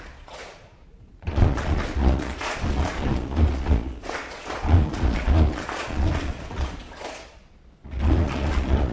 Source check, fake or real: fake